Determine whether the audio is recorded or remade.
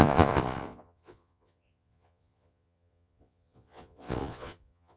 remade